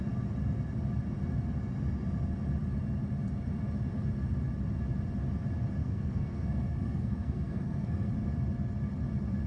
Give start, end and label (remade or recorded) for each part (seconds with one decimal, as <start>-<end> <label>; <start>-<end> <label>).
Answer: 0.0-5.8 recorded; 5.8-8.1 remade; 8.1-9.5 recorded